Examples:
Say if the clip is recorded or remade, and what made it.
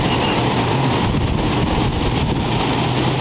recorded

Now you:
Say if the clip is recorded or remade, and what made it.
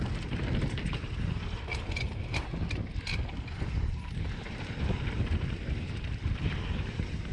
remade, vocoder, BigVGAN v2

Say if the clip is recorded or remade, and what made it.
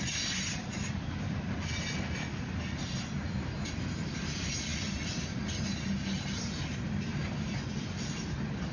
recorded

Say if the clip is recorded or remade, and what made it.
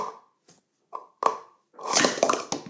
recorded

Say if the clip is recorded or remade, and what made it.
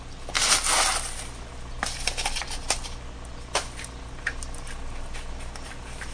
recorded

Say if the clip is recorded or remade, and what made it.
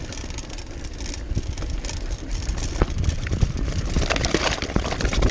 remade, vocoder, BigVGAN v2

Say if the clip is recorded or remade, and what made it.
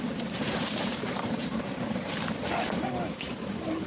remade, vocoder, BigVGAN v2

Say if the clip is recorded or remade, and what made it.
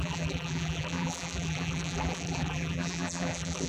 remade, vocoder, BigVGAN v2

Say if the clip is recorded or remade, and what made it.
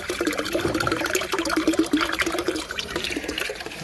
remade, vocoder, BigVGAN v2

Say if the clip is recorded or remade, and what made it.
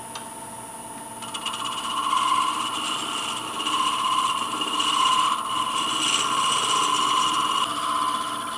recorded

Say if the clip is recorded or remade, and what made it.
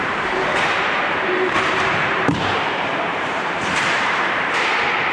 remade, vocoder, BigVGAN v2